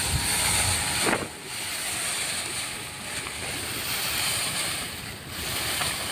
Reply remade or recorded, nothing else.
recorded